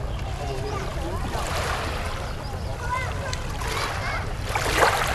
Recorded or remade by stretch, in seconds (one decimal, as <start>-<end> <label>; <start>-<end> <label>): 0.0-5.1 recorded